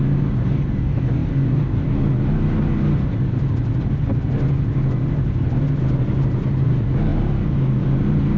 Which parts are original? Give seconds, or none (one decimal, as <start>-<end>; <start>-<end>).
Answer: 0.0-8.4